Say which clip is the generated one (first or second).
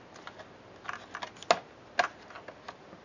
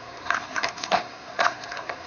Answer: second